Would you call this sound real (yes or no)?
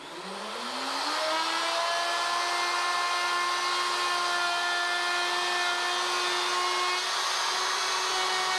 yes